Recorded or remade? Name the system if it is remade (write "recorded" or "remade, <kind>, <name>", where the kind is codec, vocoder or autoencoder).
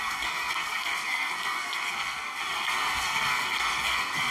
remade, codec, SNAC